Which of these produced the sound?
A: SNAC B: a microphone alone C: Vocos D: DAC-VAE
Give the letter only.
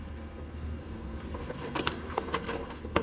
A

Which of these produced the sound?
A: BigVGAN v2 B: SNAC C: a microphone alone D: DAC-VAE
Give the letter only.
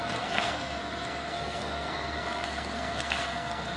B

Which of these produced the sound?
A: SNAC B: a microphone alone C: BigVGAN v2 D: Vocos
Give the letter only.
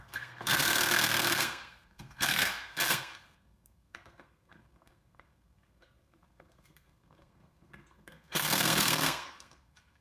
A